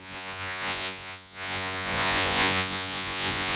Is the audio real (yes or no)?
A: no